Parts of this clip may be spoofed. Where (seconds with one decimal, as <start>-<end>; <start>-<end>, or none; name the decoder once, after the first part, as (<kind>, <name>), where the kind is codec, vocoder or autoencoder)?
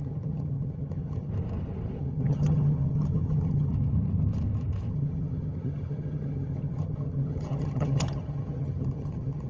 0.0-1.3 (vocoder, HiFi-GAN); 2.0-3.7; 4.9-9.5